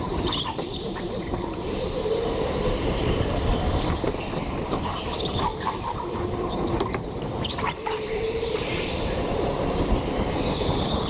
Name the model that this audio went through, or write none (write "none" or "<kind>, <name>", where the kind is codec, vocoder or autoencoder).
vocoder, BigVGAN v2